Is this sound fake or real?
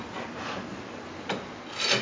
real